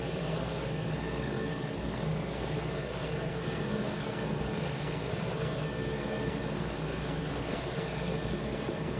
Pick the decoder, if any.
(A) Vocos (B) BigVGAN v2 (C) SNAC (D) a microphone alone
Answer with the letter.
C